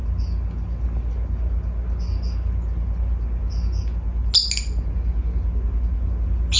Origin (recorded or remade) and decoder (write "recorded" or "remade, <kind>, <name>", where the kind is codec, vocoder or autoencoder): recorded